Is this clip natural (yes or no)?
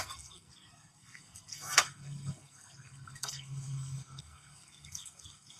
no